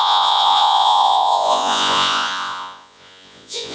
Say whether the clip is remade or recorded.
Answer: remade